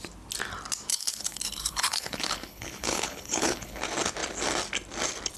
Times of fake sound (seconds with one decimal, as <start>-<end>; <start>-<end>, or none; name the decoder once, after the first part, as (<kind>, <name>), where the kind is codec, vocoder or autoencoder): 0.9-3.8 (codec, HILCodec)